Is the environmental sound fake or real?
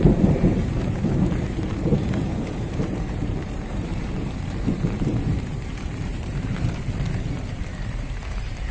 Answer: fake